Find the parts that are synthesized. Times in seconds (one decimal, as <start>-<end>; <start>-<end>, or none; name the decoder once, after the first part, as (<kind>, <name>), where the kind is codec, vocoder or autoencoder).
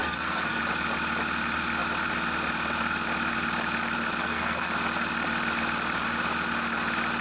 0.0-0.6 (codec, SNAC); 4.2-4.7